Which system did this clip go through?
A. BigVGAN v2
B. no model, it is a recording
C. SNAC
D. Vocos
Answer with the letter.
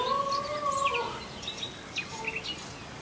B